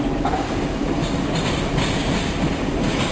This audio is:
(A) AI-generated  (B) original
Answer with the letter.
B